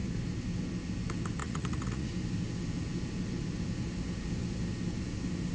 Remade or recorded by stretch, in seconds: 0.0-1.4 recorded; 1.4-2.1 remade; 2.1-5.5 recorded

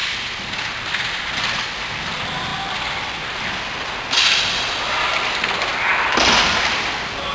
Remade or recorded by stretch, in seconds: 0.0-7.3 recorded

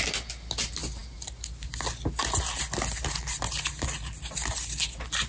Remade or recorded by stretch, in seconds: 0.0-5.3 recorded

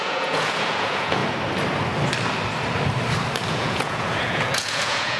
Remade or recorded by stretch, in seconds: 0.0-1.2 remade; 1.2-3.5 recorded; 3.5-5.2 remade

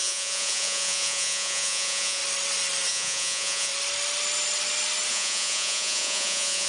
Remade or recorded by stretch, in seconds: 0.0-2.2 remade; 2.2-2.9 recorded; 2.9-3.7 remade; 3.7-5.1 recorded; 5.1-6.7 remade

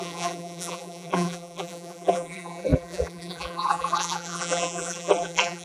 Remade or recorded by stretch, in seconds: 0.0-5.6 remade

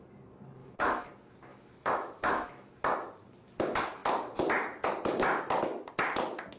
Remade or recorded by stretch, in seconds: 0.0-0.6 recorded; 0.6-1.1 remade; 1.1-1.5 recorded; 1.5-2.7 remade; 2.7-6.6 recorded

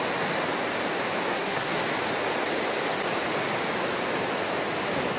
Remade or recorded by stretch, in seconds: 0.0-1.3 recorded; 1.3-1.8 remade; 1.8-5.2 recorded